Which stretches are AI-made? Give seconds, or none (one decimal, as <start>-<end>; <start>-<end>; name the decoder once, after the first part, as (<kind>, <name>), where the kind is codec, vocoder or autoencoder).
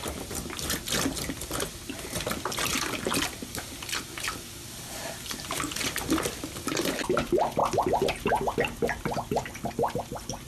2.7-4.0 (vocoder, BigVGAN v2)